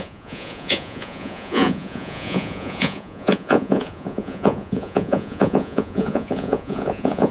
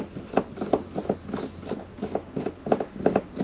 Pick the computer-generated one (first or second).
first